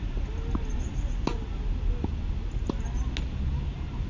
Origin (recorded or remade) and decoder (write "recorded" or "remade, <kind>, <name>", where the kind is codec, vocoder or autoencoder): recorded